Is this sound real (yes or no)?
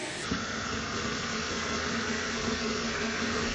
no